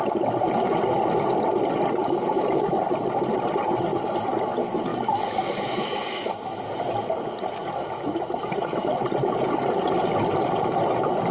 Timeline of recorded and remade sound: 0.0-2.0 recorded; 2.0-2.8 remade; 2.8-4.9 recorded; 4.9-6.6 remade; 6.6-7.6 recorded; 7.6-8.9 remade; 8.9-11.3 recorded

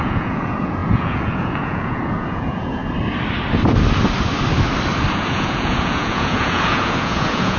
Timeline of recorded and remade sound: 0.0-2.8 remade; 2.8-5.1 recorded; 5.1-7.6 remade

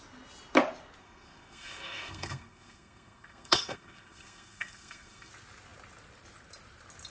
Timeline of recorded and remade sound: 0.0-1.0 recorded; 1.0-5.3 remade; 5.3-7.1 recorded

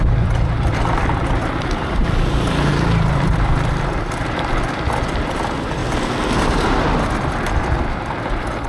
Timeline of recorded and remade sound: 0.0-5.8 remade; 5.8-6.4 recorded; 6.4-8.7 remade

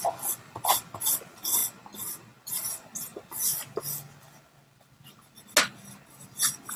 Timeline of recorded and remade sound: 0.0-6.8 recorded

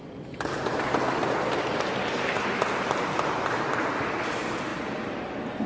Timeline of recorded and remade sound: 0.0-5.7 recorded

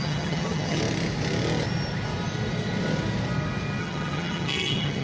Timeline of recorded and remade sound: 0.0-0.8 remade; 0.8-3.8 recorded; 3.8-5.0 remade

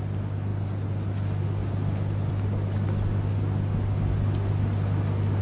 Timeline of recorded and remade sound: 0.0-5.4 recorded